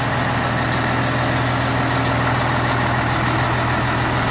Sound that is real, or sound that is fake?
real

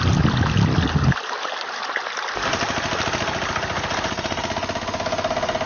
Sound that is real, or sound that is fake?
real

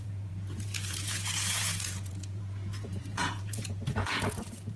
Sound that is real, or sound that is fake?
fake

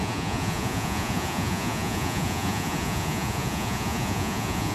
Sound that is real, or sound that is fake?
fake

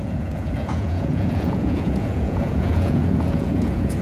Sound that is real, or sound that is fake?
fake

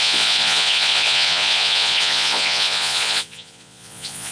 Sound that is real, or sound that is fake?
fake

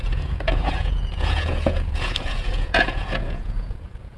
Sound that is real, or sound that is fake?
fake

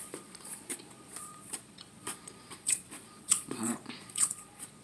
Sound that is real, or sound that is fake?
fake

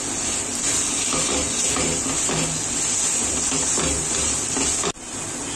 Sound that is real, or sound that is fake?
real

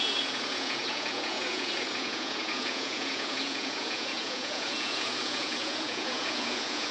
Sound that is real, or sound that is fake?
fake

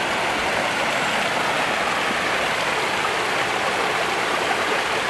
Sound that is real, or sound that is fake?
real